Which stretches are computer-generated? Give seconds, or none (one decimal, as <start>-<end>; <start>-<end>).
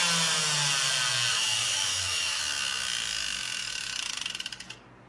1.3-2.4; 3.6-4.3